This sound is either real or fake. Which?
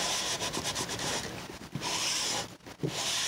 real